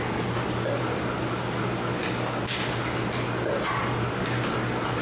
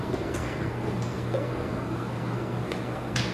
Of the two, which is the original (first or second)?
first